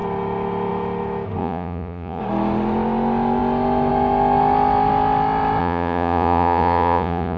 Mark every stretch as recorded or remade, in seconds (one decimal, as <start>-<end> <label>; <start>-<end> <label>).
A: 0.0-1.4 recorded; 1.4-2.2 remade; 2.2-5.6 recorded; 5.6-7.4 remade